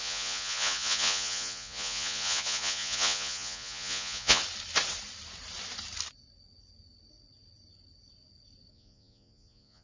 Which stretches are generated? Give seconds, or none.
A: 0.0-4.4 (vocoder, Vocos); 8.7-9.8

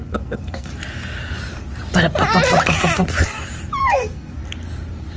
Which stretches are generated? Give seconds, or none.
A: 0.0-0.7 (codec, SNAC); 3.8-4.4

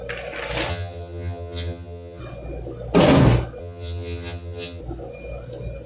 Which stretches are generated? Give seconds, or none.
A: 0.7-2.2 (vocoder, HiFi-GAN); 3.6-4.8

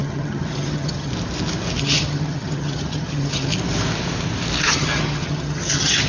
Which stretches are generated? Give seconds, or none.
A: 0.0-1.1 (vocoder, HiFi-GAN); 1.8-3.5; 4.6-6.1

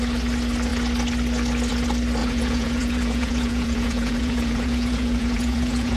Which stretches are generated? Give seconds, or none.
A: 2.2-6.0 (vocoder, Vocos)

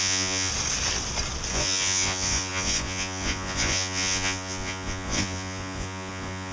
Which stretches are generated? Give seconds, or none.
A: 0.0-0.5 (vocoder, Vocos); 1.5-6.5